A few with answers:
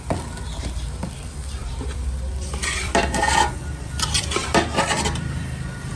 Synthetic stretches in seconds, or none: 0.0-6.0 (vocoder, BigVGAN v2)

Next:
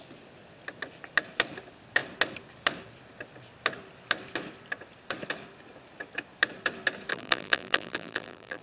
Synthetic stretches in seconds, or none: 7.1-8.6 (vocoder, BigVGAN v2)

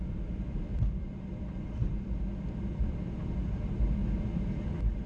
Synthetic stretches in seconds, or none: 0.0-4.0 (vocoder, BigVGAN v2)

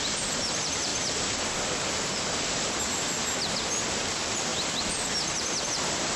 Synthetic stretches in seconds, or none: 0.0-0.9 (vocoder, BigVGAN v2); 2.8-3.2; 3.9-6.2

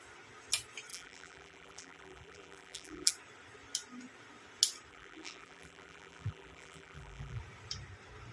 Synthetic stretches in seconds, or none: 0.9-3.1 (vocoder, BigVGAN v2); 4.9-7.4

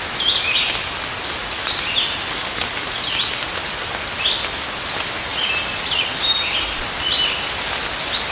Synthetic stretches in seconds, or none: none

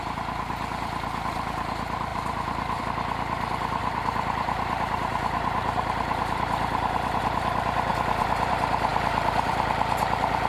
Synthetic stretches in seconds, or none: 2.1-2.8 (vocoder, BigVGAN v2); 3.8-7.2